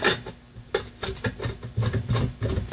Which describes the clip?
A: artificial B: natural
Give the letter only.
B